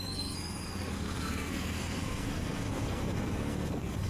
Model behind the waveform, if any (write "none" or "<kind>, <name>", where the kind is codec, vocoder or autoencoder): codec, SNAC